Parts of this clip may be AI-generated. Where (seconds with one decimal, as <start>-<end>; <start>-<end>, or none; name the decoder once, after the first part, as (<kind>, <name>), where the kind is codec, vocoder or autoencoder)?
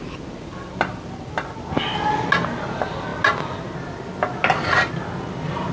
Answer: none